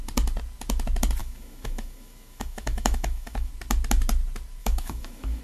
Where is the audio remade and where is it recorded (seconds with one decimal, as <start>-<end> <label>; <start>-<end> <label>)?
0.0-1.2 recorded; 1.2-3.5 remade; 3.5-4.6 recorded; 4.6-5.4 remade